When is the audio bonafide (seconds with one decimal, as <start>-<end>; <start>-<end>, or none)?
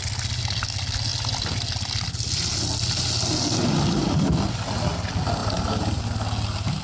0.0-5.4; 6.0-6.8